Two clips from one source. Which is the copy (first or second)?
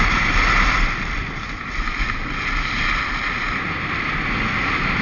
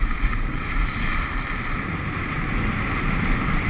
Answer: second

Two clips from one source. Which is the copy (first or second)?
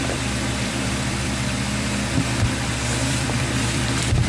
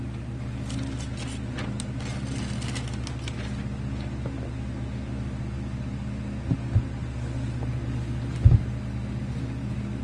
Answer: first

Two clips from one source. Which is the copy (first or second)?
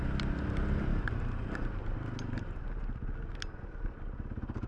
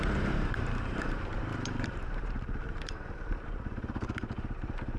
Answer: second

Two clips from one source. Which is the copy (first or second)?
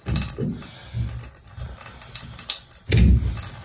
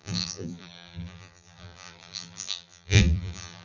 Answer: second